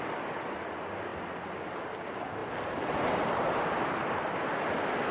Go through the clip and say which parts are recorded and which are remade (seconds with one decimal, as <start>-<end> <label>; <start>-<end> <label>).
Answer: 0.0-5.1 recorded